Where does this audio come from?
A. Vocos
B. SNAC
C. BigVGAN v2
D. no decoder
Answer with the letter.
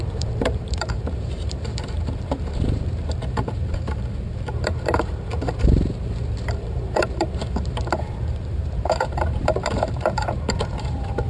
C